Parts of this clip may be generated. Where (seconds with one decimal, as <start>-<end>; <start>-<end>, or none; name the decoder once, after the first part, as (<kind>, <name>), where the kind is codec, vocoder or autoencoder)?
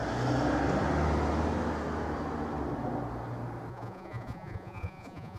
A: 3.7-5.4 (vocoder, Vocos)